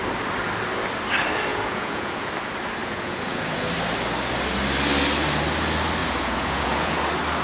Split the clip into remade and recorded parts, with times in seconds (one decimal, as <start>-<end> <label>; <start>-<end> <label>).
0.0-1.5 recorded; 1.5-2.2 remade; 2.2-2.8 recorded; 2.8-3.6 remade; 3.6-6.0 recorded; 6.0-7.0 remade; 7.0-7.4 recorded